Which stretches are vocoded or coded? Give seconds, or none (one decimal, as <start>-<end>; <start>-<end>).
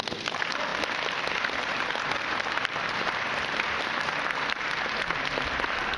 0.7-4.3